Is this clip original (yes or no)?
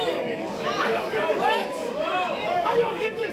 no